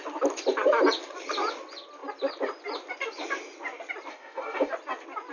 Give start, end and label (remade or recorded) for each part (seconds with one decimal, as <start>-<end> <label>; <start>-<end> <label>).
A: 0.0-4.1 recorded; 4.1-4.7 remade; 4.7-5.3 recorded

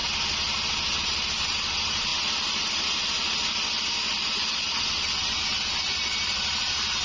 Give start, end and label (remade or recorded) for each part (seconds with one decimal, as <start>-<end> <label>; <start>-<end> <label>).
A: 0.0-1.0 recorded; 1.0-2.1 remade; 2.1-5.4 recorded; 5.4-7.0 remade

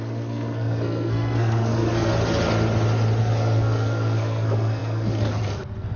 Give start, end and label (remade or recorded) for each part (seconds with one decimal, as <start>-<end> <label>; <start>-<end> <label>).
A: 0.0-2.1 remade; 2.1-3.2 recorded; 3.2-6.0 remade

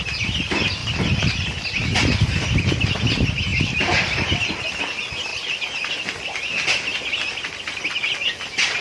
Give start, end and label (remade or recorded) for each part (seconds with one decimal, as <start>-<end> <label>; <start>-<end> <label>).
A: 0.0-0.8 recorded; 0.8-3.1 remade; 3.1-3.5 recorded; 3.5-4.6 remade; 4.6-5.3 recorded; 5.3-5.9 remade; 5.9-8.8 recorded

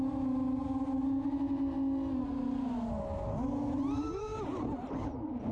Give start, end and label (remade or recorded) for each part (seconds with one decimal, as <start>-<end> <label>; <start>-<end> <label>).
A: 0.0-5.5 recorded